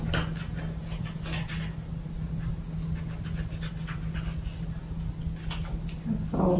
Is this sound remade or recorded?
recorded